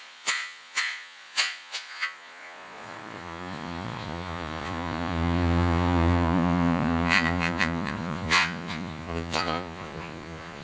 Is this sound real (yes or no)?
no